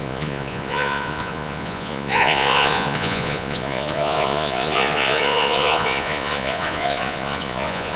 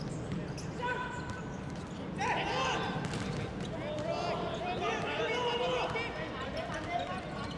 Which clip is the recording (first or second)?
second